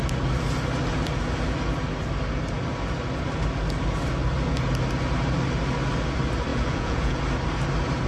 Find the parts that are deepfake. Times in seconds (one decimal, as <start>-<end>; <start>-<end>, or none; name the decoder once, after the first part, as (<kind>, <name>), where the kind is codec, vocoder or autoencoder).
6.5-7.2 (vocoder, Vocos)